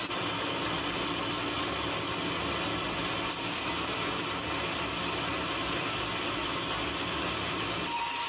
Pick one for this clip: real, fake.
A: real